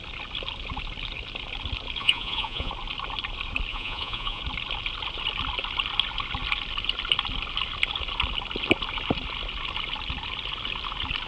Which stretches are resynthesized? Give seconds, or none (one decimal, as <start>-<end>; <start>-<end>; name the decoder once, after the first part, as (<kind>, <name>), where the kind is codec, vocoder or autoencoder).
2.0-2.7 (vocoder, Vocos); 3.7-4.4

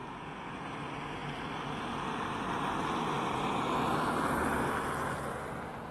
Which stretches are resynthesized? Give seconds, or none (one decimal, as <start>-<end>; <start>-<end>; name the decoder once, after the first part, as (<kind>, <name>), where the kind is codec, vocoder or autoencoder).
0.0-0.7 (vocoder, Vocos)

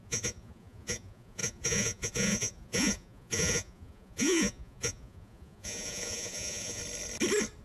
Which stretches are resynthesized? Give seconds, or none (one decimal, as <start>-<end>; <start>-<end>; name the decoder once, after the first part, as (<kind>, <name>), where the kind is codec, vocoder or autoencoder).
0.0-6.8 (vocoder, Vocos)

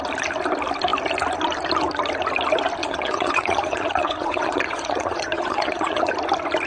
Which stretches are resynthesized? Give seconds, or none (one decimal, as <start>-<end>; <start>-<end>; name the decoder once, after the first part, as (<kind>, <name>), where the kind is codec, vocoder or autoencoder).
2.8-6.1 (vocoder, Vocos)

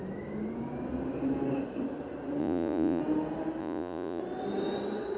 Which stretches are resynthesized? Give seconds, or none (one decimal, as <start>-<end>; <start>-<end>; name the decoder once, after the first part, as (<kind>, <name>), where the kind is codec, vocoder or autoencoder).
2.4-3.0 (vocoder, Vocos); 3.6-4.2

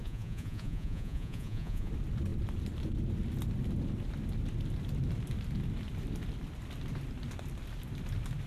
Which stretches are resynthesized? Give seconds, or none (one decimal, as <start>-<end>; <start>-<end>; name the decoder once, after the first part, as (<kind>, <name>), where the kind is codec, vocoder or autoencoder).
0.0-1.9 (vocoder, Vocos)

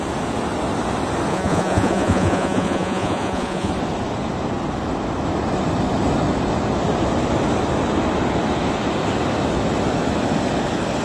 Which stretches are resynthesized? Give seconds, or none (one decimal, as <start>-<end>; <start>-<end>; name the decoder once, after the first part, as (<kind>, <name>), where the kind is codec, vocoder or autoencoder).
1.3-3.7 (vocoder, Vocos)

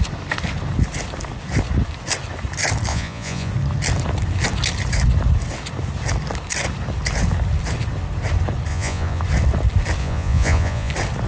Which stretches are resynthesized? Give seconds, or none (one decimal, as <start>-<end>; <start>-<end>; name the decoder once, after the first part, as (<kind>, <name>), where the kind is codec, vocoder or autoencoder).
2.9-3.5 (vocoder, Vocos); 8.7-9.2; 10.0-10.9